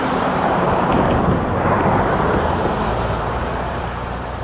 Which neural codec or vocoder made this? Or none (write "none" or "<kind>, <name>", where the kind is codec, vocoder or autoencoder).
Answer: vocoder, BigVGAN v2